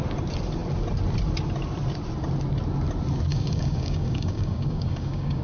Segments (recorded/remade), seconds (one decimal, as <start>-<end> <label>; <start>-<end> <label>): 0.0-3.3 recorded; 3.3-5.4 remade